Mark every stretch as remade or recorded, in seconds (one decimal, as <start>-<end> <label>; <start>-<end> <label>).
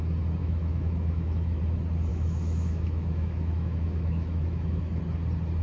0.0-0.4 recorded; 0.4-1.6 remade; 1.6-2.1 recorded; 2.1-5.0 remade; 5.0-5.6 recorded